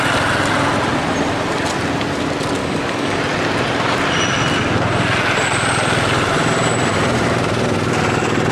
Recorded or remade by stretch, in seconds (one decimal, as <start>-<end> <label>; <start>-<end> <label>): 0.0-2.6 recorded; 2.6-3.2 remade; 3.2-8.5 recorded

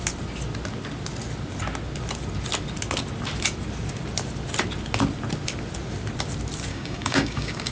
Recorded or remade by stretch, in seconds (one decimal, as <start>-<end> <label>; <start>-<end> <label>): 0.0-6.7 recorded; 6.7-7.7 remade

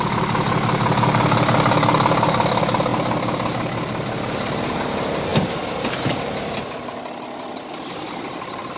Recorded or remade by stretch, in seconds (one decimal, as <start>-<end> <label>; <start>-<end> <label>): 0.0-8.8 recorded

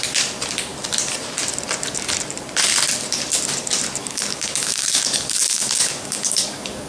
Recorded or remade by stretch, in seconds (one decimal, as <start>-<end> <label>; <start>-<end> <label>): 0.0-4.0 recorded; 4.0-6.9 remade

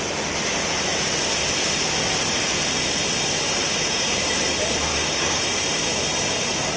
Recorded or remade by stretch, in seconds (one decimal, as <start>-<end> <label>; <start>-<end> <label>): 0.0-3.7 recorded; 3.7-4.3 remade; 4.3-4.9 recorded; 4.9-5.4 remade; 5.4-6.8 recorded

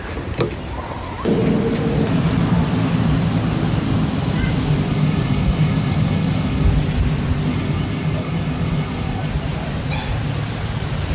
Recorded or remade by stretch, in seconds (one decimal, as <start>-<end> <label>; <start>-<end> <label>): 0.0-4.9 recorded; 4.9-6.7 remade; 6.7-7.5 recorded; 7.5-9.3 remade; 9.3-11.1 recorded